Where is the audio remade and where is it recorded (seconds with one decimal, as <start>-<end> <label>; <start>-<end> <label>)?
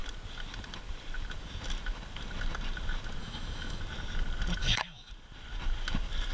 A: 0.0-3.2 recorded; 3.2-3.8 remade; 3.8-4.6 recorded; 4.6-5.1 remade; 5.1-6.3 recorded